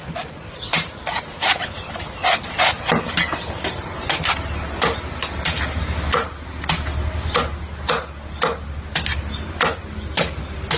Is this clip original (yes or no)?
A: yes